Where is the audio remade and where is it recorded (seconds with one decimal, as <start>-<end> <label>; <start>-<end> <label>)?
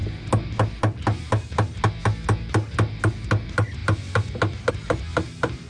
0.0-5.7 recorded